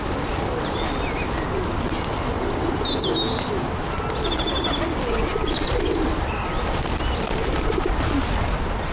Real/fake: real